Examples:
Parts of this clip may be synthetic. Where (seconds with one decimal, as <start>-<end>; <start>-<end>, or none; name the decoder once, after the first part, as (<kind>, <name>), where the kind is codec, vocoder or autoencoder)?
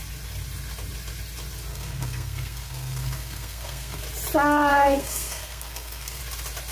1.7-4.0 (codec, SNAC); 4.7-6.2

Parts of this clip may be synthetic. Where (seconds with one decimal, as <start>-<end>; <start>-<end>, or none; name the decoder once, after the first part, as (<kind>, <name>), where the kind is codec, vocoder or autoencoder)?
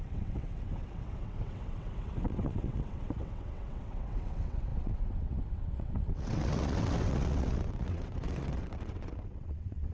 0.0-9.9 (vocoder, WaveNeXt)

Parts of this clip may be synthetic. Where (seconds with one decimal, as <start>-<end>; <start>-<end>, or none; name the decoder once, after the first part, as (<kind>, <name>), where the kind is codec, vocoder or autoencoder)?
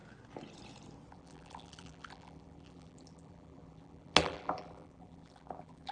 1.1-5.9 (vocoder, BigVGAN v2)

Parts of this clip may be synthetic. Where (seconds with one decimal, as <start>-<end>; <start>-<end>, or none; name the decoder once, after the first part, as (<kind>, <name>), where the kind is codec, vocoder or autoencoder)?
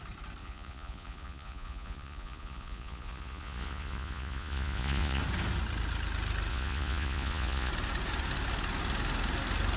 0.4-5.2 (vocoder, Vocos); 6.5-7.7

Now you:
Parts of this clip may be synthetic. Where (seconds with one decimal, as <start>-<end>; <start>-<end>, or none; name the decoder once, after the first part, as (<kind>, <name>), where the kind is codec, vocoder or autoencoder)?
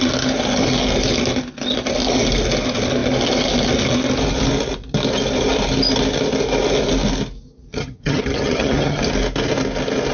7.7-9.0 (vocoder, HiFi-GAN)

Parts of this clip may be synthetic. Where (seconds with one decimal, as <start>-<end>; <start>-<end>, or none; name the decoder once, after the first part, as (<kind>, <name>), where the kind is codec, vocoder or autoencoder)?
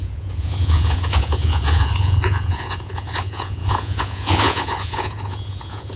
0.0-6.0 (vocoder, Vocos)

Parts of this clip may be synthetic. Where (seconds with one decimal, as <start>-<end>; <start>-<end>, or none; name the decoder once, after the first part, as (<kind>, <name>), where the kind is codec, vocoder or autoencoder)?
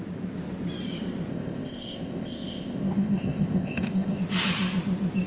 1.3-4.2 (codec, ZipCodec)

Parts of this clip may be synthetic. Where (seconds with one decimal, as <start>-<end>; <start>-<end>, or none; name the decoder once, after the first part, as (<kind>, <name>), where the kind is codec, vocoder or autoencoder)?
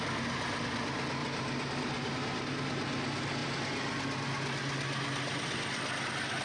1.2-2.5 (vocoder, BigVGAN v2)